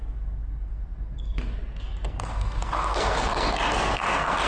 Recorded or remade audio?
remade